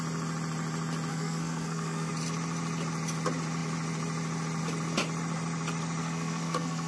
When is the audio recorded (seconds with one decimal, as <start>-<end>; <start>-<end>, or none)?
0.0-1.1; 2.1-6.0